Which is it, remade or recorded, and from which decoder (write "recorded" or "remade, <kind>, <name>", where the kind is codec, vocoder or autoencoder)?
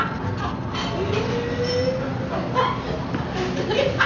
recorded